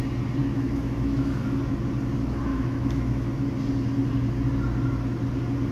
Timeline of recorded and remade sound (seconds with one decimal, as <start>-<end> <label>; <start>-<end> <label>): 0.0-0.4 recorded; 0.4-1.6 remade; 1.6-2.5 recorded; 2.5-3.5 remade; 3.5-5.7 recorded